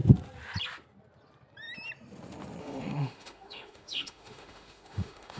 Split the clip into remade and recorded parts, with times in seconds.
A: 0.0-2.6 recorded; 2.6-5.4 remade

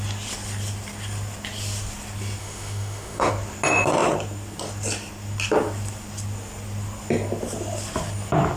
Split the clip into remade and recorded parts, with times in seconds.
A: 0.0-2.4 recorded; 2.4-3.3 remade; 3.3-8.6 recorded

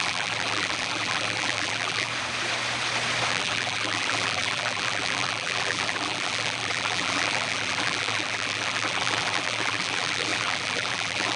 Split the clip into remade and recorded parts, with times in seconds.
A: 0.0-2.1 remade; 2.1-3.3 recorded; 3.3-11.4 remade

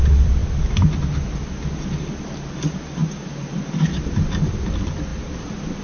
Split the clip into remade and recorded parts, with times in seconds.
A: 0.0-5.8 recorded

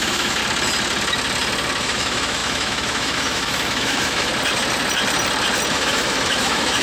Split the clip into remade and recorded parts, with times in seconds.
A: 0.0-0.4 remade; 0.4-1.8 recorded; 1.8-4.3 remade; 4.3-5.7 recorded; 5.7-6.8 remade

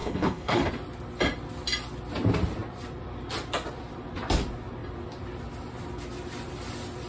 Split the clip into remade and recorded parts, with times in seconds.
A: 0.0-0.7 remade; 0.7-7.1 recorded

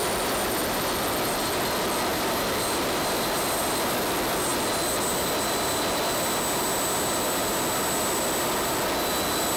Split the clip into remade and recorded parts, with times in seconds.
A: 0.0-2.1 recorded; 2.1-3.6 remade; 3.6-9.6 recorded

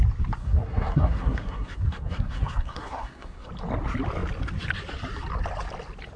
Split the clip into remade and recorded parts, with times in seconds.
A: 0.0-0.4 recorded; 0.4-3.5 remade; 3.5-6.2 recorded